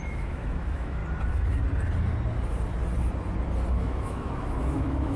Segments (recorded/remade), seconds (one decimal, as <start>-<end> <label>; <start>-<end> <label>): 0.0-1.0 remade; 1.0-3.7 recorded; 3.7-5.2 remade